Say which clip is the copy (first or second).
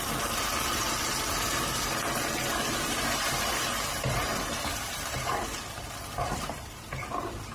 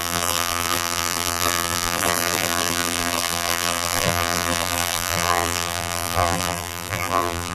second